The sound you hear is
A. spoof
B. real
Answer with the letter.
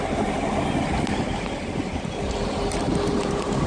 B